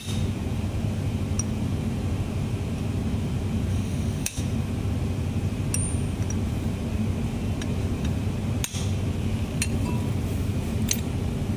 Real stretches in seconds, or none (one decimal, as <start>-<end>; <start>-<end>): 0.0-3.7; 4.4-11.6